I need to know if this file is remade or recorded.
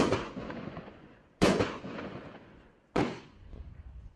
remade